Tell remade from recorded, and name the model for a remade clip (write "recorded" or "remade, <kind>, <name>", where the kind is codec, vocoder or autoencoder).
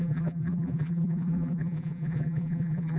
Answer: remade, vocoder, BigVGAN v2